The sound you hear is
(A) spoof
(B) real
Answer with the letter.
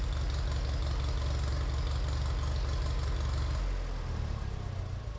B